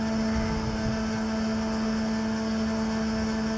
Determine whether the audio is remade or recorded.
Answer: recorded